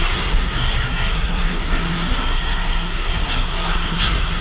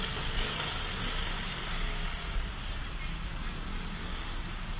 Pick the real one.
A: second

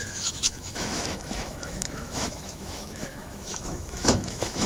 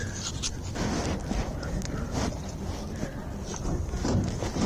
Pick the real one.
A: second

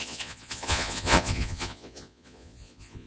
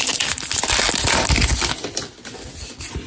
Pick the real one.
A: second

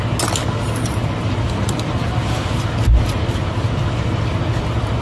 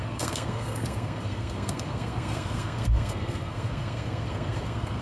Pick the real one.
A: first